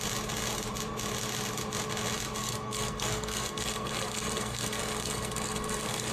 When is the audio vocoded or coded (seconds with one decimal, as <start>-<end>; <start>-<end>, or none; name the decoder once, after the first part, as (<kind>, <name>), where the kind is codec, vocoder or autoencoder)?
2.4-6.1 (codec, SNAC)